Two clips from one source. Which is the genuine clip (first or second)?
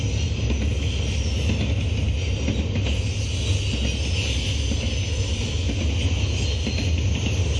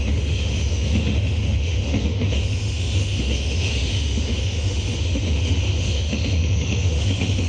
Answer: first